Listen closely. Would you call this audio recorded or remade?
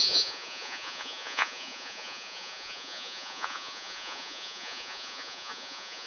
remade